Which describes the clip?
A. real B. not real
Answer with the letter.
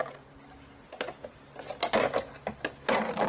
A